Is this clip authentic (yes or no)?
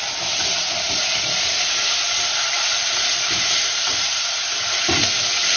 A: yes